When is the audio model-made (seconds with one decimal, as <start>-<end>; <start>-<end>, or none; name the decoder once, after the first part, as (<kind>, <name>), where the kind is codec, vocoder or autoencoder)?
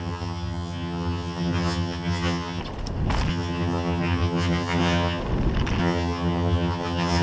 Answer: 0.0-2.6 (vocoder, HiFi-GAN); 3.3-5.2; 5.8-7.2